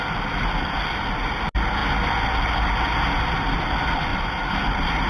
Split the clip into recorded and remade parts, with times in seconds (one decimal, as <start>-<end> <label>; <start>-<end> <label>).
0.0-4.1 recorded; 4.1-5.1 remade